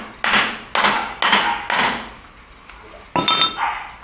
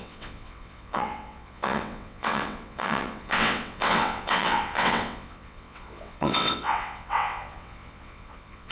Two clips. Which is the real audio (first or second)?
first